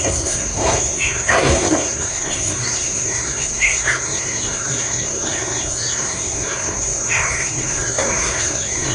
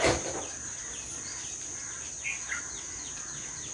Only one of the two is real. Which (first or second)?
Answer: second